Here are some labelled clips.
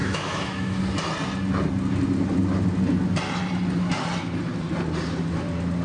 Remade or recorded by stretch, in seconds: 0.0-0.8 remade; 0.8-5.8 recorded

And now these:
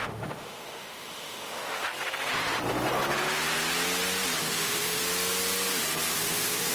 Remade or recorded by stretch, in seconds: 0.0-1.8 remade; 1.8-4.4 recorded; 4.4-5.0 remade; 5.0-6.1 recorded; 6.1-6.7 remade

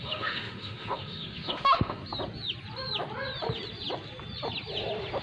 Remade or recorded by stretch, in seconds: 0.0-2.0 remade; 2.0-5.2 recorded